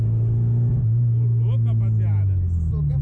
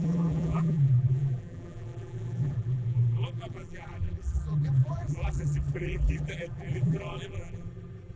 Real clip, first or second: first